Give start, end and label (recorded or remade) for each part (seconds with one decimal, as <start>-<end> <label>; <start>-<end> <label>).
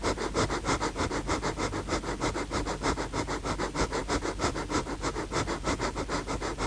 0.0-6.7 recorded